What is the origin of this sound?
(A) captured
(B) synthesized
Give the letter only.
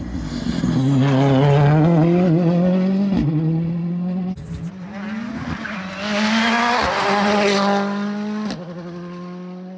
A